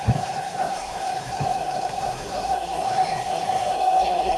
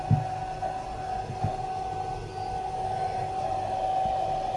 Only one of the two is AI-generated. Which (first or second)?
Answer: first